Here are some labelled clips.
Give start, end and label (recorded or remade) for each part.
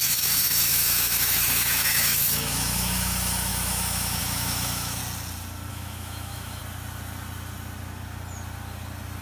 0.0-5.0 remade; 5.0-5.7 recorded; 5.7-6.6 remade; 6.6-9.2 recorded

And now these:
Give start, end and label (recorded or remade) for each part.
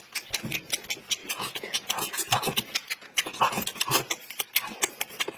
0.0-1.2 recorded; 1.2-3.8 remade; 3.8-5.4 recorded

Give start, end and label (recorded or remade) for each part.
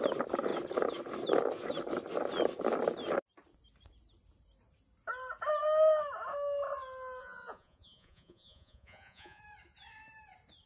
0.0-7.2 recorded; 7.2-9.4 remade; 9.4-10.7 recorded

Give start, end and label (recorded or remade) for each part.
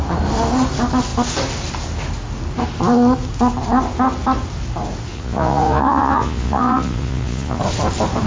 0.0-5.1 recorded; 5.1-7.6 remade; 7.6-8.3 recorded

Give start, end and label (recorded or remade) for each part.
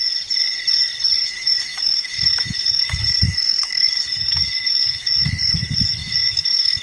0.0-1.2 recorded; 1.2-5.3 remade; 5.3-6.0 recorded; 6.0-6.8 remade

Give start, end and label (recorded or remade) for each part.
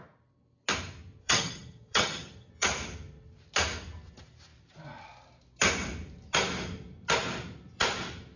0.0-1.2 recorded; 1.2-2.5 remade; 2.5-8.4 recorded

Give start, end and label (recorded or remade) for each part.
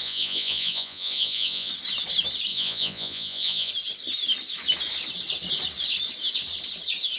0.0-1.7 remade; 1.7-2.5 recorded; 2.5-3.7 remade; 3.7-7.2 recorded